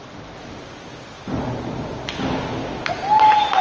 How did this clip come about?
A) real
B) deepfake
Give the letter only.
A